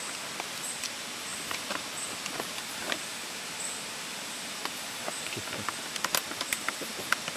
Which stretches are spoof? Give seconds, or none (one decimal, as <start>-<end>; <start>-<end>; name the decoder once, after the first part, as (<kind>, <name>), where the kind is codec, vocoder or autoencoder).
1.3-1.8 (vocoder, BigVGAN v2); 2.8-6.9